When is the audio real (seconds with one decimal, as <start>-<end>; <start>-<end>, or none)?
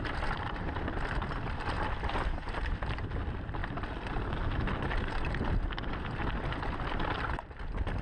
3.6-5.9